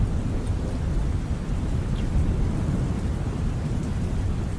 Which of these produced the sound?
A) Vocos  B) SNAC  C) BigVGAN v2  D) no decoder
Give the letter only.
D